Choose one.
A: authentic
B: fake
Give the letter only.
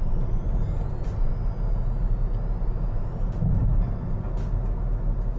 A